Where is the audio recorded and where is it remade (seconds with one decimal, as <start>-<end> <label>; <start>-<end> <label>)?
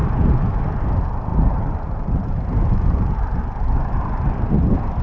0.0-1.3 recorded; 1.3-3.2 remade; 3.2-5.0 recorded